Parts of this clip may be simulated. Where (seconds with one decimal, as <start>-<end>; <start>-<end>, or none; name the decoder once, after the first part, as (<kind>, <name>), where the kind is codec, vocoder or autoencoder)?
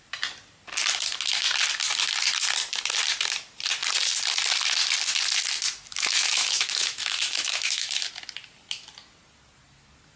5.9-8.1 (autoencoder, DAC-VAE)